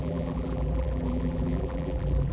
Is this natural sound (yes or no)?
no